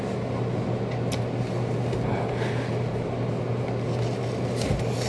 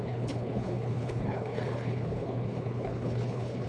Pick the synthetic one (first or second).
second